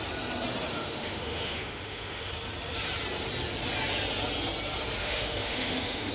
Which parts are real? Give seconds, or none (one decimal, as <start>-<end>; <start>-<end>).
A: 0.0-0.7; 2.3-5.0